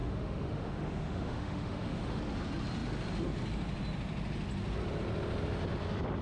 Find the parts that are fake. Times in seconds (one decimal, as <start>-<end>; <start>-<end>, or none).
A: 0.0-2.2